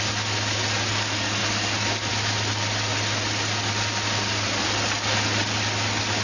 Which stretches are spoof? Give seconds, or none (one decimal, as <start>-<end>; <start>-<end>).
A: none